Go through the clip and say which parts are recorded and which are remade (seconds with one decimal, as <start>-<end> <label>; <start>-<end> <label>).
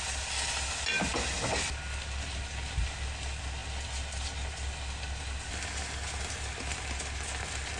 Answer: 0.0-7.8 recorded